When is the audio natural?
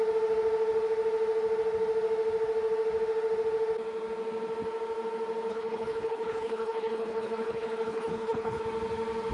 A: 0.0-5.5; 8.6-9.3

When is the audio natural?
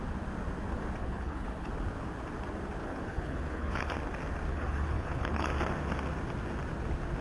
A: 0.0-1.0; 1.7-2.8; 3.9-4.5; 5.5-7.2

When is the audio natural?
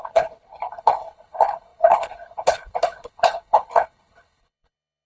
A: none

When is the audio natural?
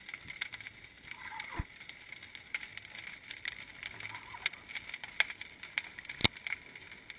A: 0.0-7.2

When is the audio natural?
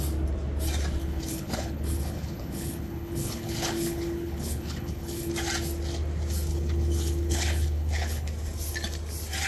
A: 0.0-1.0; 5.3-6.5; 8.3-9.5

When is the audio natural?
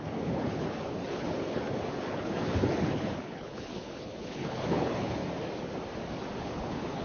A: 5.2-6.4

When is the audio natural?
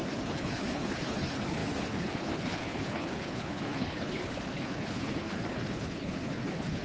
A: none